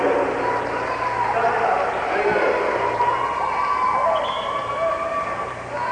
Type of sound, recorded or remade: recorded